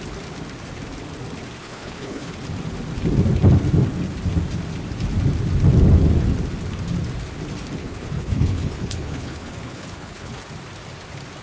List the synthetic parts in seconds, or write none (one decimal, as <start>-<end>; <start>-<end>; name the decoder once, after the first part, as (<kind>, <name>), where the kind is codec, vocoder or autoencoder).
1.6-2.3 (codec, HILCodec); 7.8-10.4